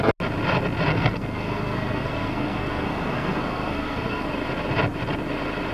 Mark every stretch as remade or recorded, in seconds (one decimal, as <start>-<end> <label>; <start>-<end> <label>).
0.0-0.9 recorded; 0.9-4.3 remade; 4.3-5.7 recorded